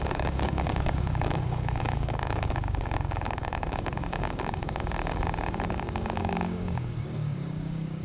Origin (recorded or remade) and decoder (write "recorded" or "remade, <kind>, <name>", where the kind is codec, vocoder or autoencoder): remade, codec, DAC